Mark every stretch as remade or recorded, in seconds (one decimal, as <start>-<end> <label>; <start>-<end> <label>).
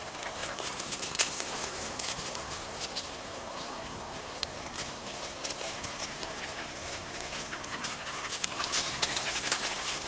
0.0-10.1 remade